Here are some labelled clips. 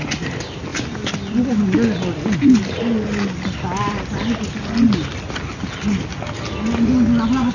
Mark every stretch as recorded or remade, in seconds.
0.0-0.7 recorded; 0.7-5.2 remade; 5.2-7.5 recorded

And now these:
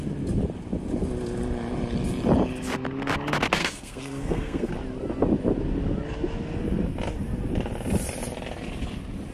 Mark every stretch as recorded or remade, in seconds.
0.0-3.6 recorded; 3.6-4.7 remade; 4.7-9.3 recorded

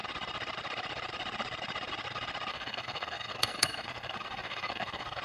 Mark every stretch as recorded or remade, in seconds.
0.0-2.5 recorded; 2.5-5.2 remade